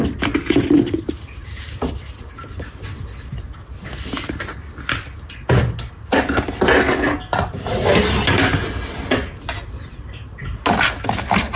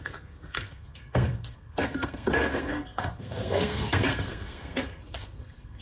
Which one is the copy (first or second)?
second